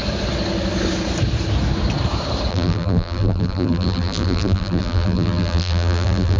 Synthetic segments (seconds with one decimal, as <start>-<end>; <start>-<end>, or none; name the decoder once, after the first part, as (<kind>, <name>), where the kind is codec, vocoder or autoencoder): 2.5-6.4 (vocoder, BigVGAN v2)